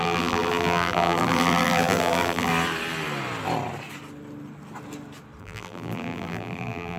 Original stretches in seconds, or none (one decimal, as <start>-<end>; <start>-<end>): 2.5-5.4